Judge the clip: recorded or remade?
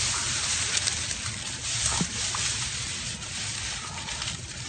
recorded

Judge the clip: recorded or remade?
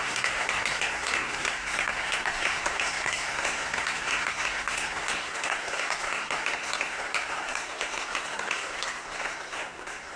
remade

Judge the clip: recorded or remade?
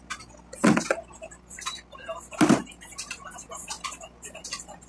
recorded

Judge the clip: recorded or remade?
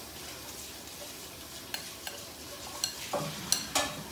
recorded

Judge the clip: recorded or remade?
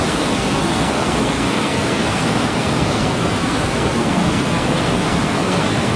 remade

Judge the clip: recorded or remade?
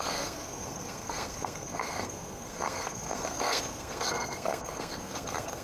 remade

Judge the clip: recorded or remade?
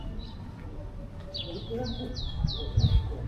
recorded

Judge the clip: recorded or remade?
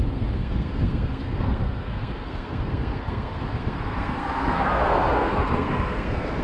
remade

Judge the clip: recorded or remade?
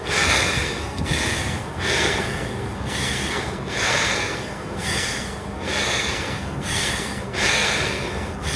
remade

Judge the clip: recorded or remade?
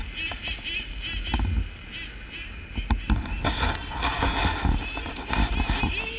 recorded